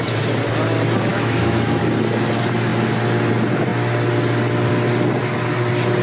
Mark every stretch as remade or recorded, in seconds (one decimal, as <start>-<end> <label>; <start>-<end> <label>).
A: 0.0-1.1 recorded; 1.1-1.8 remade; 1.8-6.0 recorded